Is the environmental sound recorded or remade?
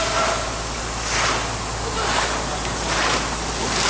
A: recorded